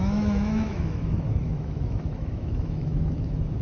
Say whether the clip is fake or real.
fake